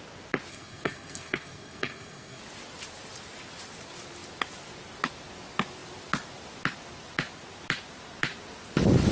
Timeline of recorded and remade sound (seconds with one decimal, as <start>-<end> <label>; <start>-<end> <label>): 0.0-0.5 recorded; 0.5-2.4 remade; 2.4-9.1 recorded